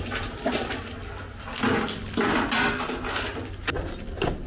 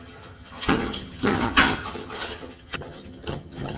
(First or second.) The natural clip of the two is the first